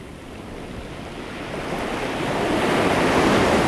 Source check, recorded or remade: recorded